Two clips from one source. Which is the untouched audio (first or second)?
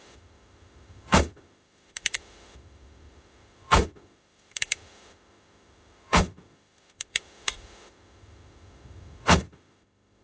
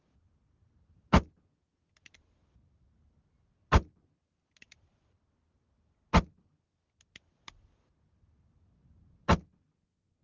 second